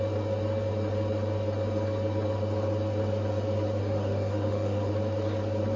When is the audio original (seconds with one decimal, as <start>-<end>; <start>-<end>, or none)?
0.0-3.8; 4.9-5.8